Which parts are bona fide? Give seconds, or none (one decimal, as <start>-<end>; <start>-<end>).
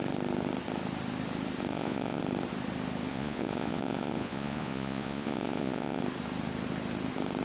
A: 0.0-1.7; 2.2-3.1; 6.0-7.4